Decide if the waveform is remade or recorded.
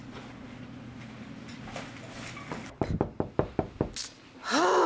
recorded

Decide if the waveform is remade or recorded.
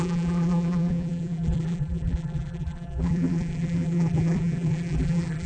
remade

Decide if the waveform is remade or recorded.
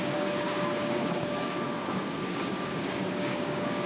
remade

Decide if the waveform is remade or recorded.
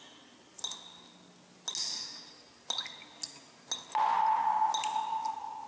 recorded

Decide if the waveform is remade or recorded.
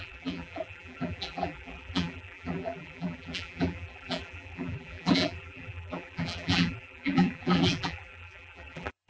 remade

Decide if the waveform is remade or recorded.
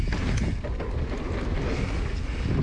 recorded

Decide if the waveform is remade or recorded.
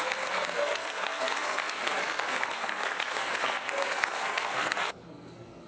remade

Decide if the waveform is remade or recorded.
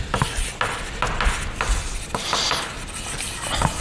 recorded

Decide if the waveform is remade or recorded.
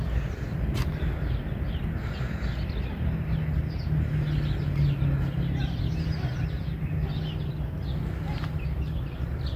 recorded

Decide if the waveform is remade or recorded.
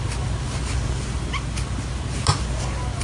recorded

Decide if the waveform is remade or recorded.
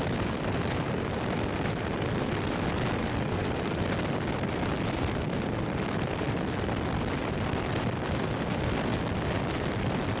remade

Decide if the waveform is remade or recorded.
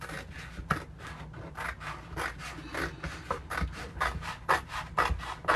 recorded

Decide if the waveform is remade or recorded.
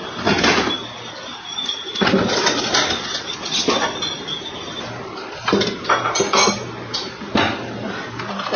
recorded